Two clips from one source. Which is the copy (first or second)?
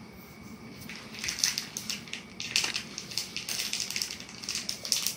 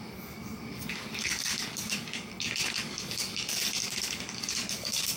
second